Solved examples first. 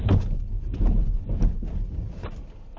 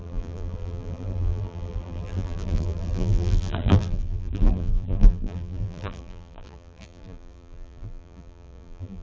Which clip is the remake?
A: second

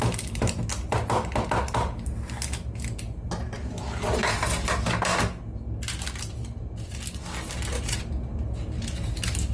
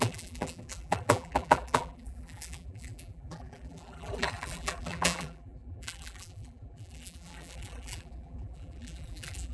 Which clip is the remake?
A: second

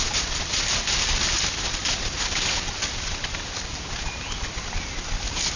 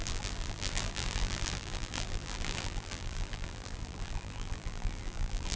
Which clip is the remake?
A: second